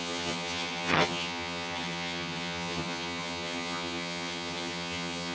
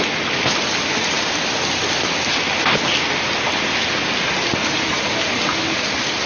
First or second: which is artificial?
first